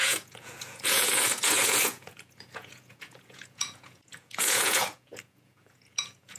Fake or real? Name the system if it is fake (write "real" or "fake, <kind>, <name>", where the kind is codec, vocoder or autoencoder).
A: fake, vocoder, Vocos